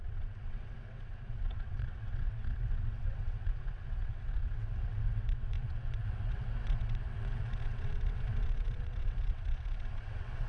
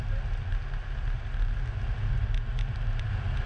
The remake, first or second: first